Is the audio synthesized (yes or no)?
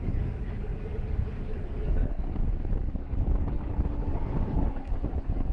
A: yes